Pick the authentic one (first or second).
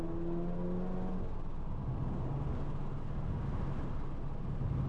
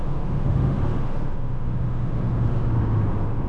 first